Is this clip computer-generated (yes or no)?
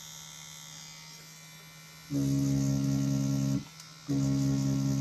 no